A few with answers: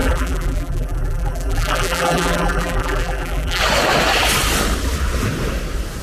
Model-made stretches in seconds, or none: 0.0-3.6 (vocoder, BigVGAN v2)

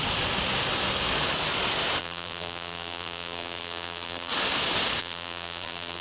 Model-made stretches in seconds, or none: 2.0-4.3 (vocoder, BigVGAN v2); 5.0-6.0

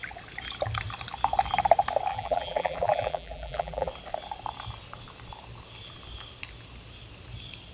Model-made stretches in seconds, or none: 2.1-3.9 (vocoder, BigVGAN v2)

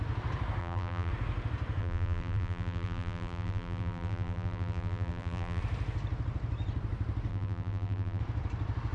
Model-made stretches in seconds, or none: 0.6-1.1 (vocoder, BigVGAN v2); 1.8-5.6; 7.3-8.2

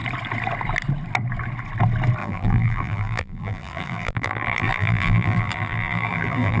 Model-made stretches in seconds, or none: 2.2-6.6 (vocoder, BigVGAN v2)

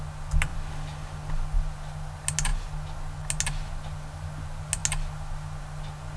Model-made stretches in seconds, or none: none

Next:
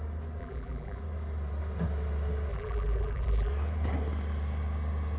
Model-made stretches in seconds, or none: 0.4-1.0 (vocoder, BigVGAN v2); 2.5-3.5

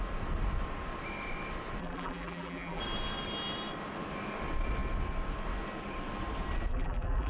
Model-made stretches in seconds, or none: 1.8-2.8 (vocoder, BigVGAN v2); 6.7-7.3